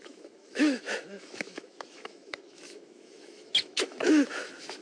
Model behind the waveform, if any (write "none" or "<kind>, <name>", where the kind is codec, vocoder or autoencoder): autoencoder, DAC-VAE